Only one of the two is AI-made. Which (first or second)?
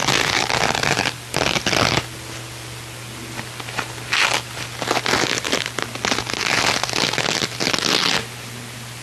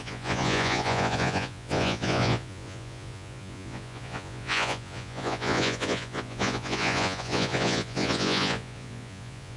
second